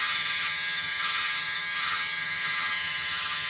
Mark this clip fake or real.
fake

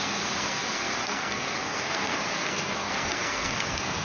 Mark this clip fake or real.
fake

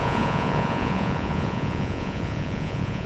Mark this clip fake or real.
fake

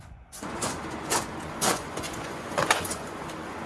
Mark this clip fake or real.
fake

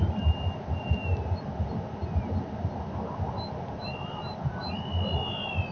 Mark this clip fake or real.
real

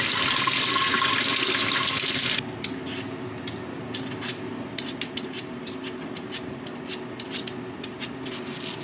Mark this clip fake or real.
real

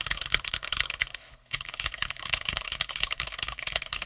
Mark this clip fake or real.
fake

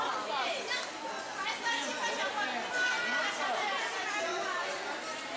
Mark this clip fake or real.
real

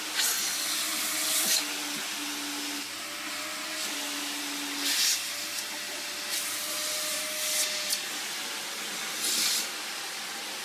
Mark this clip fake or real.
real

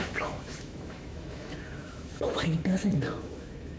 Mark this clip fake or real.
fake